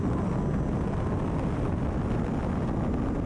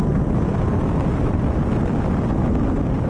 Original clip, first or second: first